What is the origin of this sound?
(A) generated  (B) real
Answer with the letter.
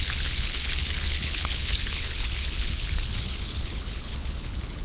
A